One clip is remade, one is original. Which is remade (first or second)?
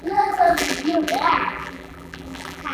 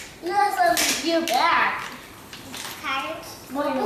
first